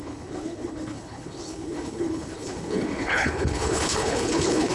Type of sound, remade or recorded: remade